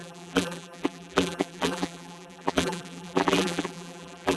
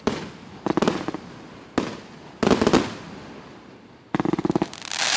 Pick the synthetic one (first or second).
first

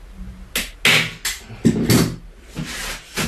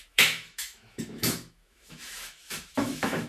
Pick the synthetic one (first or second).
second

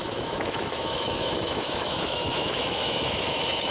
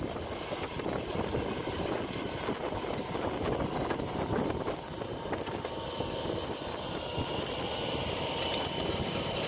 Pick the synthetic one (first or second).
first